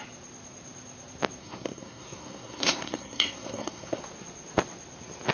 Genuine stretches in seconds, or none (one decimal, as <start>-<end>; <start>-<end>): 0.0-1.4; 4.0-5.3